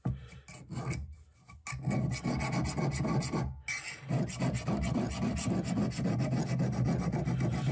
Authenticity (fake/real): real